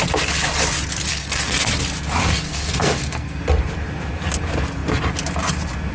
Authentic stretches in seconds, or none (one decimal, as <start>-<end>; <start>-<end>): 0.0-1.1; 1.7-2.2; 3.4-5.9